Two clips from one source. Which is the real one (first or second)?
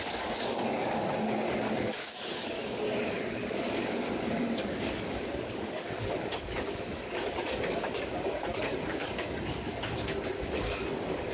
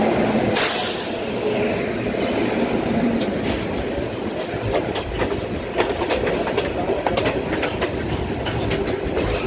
second